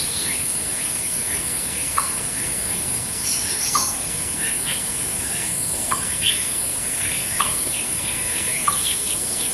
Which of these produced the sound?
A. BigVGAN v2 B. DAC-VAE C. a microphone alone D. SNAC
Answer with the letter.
D